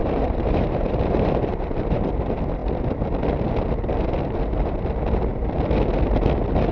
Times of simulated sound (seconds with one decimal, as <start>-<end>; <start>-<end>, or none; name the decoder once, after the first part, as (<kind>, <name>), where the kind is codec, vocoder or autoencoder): 0.0-2.1 (vocoder, BigVGAN v2)